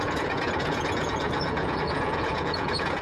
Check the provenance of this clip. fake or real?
fake